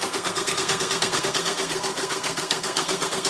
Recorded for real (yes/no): no